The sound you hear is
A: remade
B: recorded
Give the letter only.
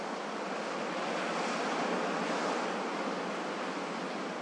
B